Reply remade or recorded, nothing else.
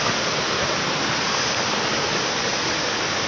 recorded